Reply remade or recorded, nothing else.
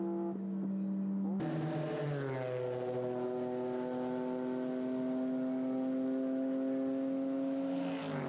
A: recorded